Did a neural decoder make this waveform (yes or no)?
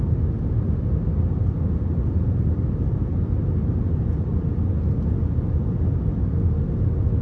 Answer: no